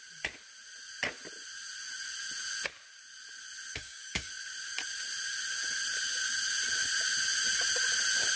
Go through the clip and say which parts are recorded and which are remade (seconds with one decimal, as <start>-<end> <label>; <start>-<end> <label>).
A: 0.0-3.7 recorded; 3.7-4.3 remade; 4.3-8.4 recorded